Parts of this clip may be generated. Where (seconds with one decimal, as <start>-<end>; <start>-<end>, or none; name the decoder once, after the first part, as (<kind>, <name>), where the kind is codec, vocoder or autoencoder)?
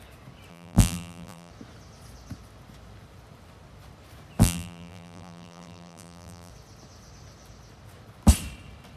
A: 0.5-1.5 (vocoder, BigVGAN v2); 4.4-6.5